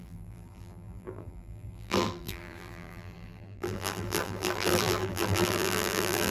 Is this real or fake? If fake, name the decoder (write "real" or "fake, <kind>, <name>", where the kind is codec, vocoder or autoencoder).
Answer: fake, vocoder, BigVGAN v2